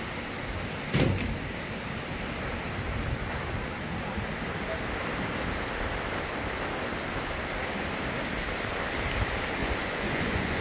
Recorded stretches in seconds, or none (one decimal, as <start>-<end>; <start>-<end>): 0.0-9.6